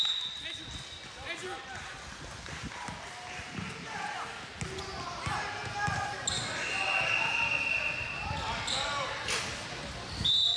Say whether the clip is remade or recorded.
recorded